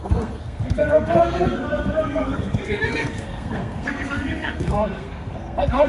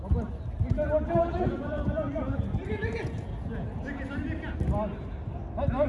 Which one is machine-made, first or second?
first